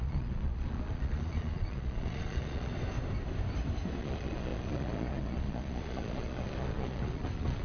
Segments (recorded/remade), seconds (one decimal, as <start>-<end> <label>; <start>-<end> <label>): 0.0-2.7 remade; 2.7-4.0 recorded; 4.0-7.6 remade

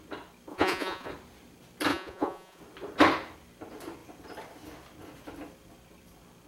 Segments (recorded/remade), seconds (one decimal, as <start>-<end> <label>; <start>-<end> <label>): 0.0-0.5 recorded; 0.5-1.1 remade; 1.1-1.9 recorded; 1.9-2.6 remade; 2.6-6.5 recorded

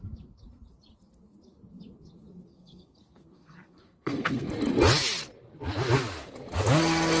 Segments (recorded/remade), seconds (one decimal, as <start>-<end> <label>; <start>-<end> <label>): 0.0-2.5 recorded; 2.5-4.5 remade; 4.5-7.2 recorded

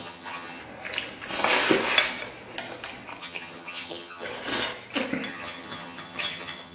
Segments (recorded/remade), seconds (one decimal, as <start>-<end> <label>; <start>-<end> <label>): 0.0-0.6 remade; 0.6-3.2 recorded; 3.2-4.3 remade; 4.3-5.3 recorded; 5.3-6.7 remade

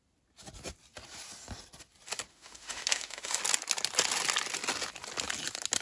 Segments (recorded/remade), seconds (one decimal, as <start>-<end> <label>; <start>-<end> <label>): 0.0-2.3 recorded; 2.3-3.4 remade; 3.4-5.8 recorded

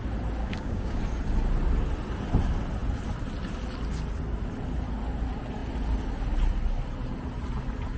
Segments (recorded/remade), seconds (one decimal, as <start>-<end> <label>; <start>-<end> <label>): 0.0-0.4 recorded; 0.4-1.0 remade; 1.0-8.0 recorded

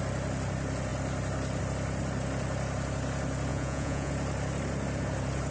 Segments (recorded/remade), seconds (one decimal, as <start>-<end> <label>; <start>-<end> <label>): 0.0-3.5 recorded; 3.5-4.1 remade; 4.1-5.5 recorded

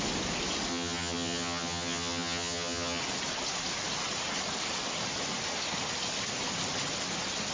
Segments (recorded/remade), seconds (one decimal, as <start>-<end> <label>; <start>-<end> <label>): 0.0-0.7 recorded; 0.7-3.0 remade; 3.0-7.5 recorded